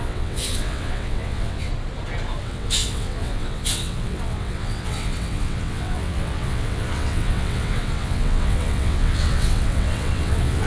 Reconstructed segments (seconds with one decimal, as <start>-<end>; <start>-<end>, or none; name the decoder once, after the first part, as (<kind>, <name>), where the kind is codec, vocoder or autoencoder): 0.0-1.7 (vocoder, WaveNeXt); 2.4-10.7

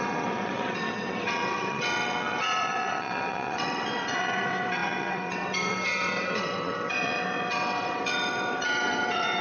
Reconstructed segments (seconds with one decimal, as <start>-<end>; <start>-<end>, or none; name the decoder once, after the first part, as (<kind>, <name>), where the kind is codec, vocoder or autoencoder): 0.0-9.4 (vocoder, WaveNeXt)

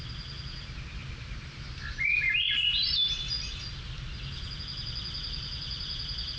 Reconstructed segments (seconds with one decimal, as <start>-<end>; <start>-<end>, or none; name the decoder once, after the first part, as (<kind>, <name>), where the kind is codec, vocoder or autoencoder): none